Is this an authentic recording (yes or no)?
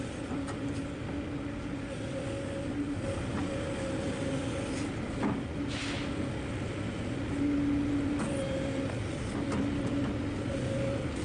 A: yes